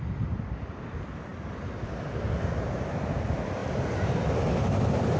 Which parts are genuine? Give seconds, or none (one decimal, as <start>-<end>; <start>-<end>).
0.0-5.2